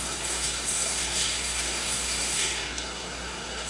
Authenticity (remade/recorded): remade